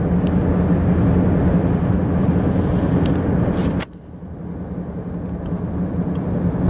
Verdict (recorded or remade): recorded